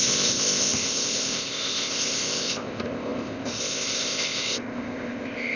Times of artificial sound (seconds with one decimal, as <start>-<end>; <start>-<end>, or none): 0.0-5.6